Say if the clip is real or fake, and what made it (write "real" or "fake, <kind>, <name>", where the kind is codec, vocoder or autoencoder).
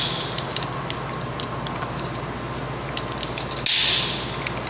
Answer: real